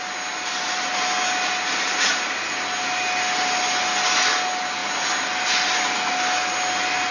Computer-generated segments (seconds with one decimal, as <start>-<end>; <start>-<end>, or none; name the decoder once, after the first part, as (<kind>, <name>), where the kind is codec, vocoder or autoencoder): none